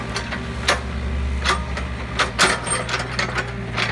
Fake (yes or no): no